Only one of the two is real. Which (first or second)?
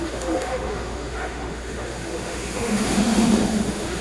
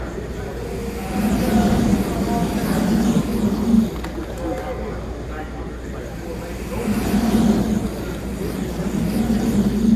second